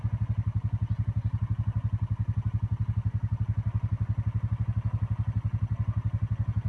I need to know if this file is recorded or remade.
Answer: recorded